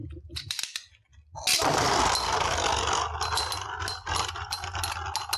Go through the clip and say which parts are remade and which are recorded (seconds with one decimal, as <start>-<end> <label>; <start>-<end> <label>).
0.0-0.6 remade; 0.6-5.4 recorded